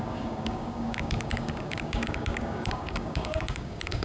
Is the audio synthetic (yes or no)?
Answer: yes